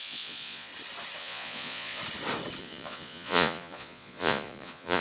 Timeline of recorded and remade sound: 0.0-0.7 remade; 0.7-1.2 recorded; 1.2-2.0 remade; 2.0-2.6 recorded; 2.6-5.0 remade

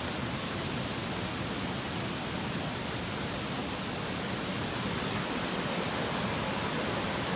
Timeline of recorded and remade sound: 0.0-7.4 recorded